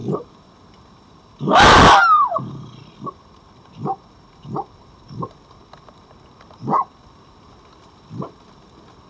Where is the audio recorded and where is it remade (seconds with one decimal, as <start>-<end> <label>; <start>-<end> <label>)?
0.0-9.1 recorded